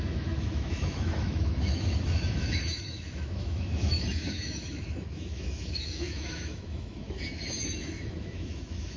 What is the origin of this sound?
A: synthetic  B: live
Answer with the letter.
A